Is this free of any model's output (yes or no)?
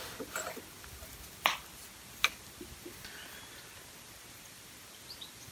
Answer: yes